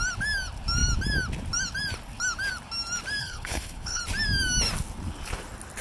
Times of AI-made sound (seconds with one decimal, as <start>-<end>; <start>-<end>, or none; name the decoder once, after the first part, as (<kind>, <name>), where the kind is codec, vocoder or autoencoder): 3.2-4.0 (codec, HILCodec)